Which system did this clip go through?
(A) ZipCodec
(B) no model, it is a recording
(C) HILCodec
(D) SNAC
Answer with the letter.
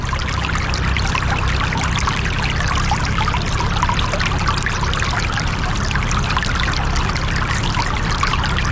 B